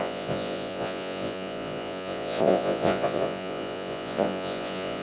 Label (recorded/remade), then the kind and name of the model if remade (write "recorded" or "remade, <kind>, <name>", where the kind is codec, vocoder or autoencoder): remade, vocoder, Vocos